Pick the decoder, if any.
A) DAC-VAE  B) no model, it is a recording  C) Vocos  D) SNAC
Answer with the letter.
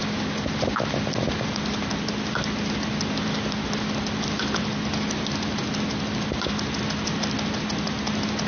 B